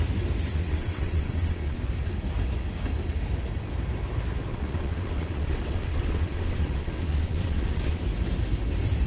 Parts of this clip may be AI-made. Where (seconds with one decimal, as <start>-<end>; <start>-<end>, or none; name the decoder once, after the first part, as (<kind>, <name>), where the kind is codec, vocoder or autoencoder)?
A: 0.5-1.8 (vocoder, WaveNeXt); 4.5-8.0